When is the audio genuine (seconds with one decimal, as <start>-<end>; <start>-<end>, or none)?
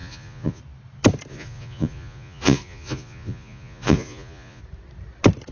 0.6-1.3; 4.6-5.5